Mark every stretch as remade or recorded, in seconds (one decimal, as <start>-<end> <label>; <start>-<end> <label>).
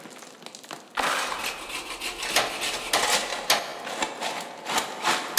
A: 0.0-5.4 recorded